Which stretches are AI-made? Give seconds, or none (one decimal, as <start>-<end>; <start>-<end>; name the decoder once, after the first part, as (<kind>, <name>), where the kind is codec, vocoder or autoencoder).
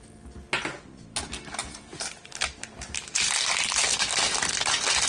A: 1.6-5.1 (vocoder, BigVGAN v2)